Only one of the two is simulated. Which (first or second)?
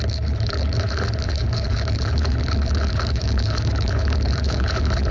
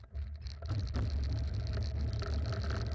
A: first